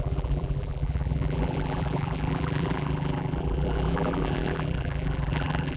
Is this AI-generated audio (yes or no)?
yes